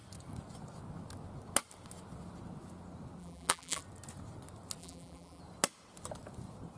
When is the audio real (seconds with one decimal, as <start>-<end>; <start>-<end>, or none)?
0.0-3.2; 3.8-4.8; 5.4-6.8